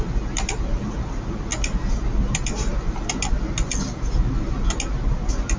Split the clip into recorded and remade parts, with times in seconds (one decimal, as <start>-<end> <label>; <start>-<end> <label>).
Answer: 0.0-5.6 recorded